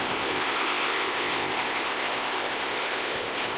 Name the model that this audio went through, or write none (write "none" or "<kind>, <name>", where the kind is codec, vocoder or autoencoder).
codec, ZipCodec